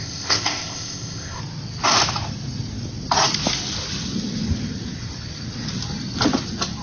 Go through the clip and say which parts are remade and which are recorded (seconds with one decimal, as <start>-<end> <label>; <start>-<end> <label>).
0.0-1.4 remade; 1.4-6.8 recorded